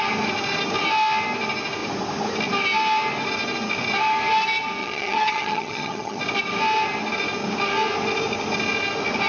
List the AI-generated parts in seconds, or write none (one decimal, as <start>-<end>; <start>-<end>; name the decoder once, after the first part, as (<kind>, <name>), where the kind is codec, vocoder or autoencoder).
4.8-6.2 (vocoder, HiFi-GAN)